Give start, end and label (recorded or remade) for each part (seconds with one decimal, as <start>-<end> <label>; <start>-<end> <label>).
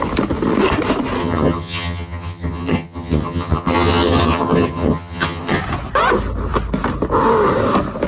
0.0-1.2 recorded; 1.2-5.6 remade; 5.6-8.1 recorded